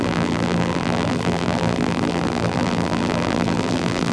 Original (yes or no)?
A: no